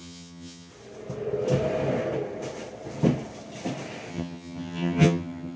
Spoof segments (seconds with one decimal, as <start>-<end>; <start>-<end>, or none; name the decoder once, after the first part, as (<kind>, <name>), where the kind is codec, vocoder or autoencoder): 0.0-0.7 (vocoder, HiFi-GAN); 4.1-5.6